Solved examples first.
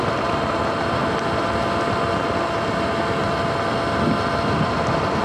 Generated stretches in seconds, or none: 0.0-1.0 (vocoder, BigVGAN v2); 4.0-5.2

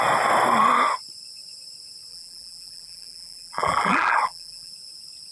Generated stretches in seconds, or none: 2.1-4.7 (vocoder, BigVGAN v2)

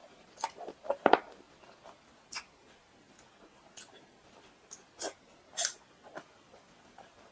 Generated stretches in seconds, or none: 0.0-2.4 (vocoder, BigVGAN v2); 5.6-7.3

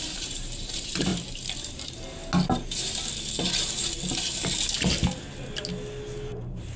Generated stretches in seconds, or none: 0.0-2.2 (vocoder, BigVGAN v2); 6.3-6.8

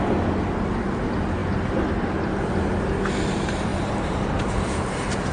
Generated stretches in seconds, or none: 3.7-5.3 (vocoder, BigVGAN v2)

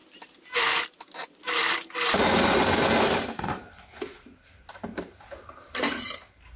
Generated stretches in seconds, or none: 3.4-6.6 (vocoder, BigVGAN v2)

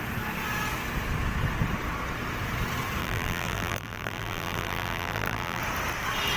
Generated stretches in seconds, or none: 3.0-5.6 (vocoder, BigVGAN v2)